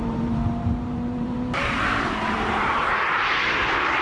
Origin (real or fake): fake